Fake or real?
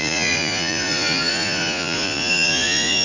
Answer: fake